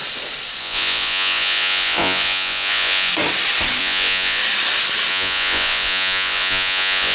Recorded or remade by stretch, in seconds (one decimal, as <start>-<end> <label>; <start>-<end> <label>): 0.0-0.6 recorded; 0.6-3.1 remade; 3.1-3.8 recorded; 3.8-4.4 remade; 4.4-5.1 recorded; 5.1-7.1 remade